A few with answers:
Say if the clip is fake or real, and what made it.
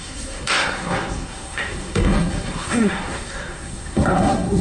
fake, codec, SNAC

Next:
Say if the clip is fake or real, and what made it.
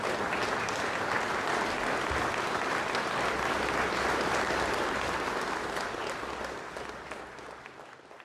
real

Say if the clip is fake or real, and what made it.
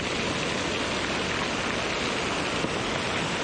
real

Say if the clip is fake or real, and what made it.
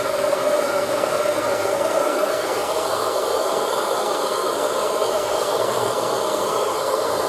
fake, codec, SNAC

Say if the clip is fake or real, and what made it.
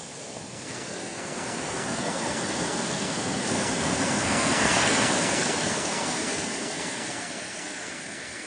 fake, codec, SNAC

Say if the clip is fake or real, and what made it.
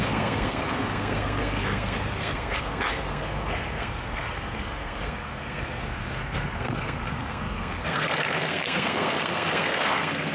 fake, codec, SNAC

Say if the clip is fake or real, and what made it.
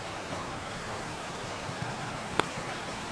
fake, codec, SNAC